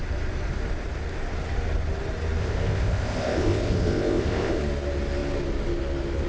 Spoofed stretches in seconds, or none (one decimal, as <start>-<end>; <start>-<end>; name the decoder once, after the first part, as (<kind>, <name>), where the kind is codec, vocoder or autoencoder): 2.4-4.6 (codec, ZipCodec)